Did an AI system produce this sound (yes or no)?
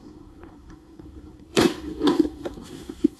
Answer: yes